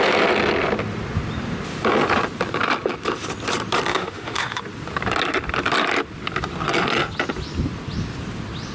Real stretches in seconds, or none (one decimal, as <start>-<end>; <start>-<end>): 0.0-3.9; 4.6-8.7